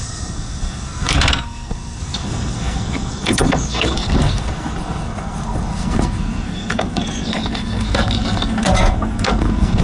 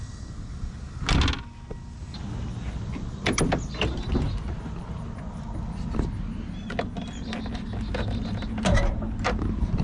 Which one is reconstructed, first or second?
first